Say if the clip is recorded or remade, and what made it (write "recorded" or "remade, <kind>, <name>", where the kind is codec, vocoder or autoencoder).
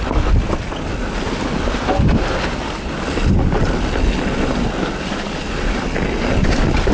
recorded